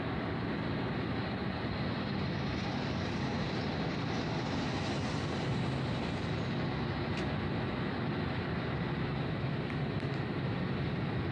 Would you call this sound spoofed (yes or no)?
no